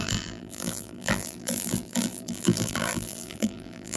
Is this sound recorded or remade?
remade